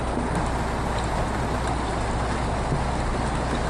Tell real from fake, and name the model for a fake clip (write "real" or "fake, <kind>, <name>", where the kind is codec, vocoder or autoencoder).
real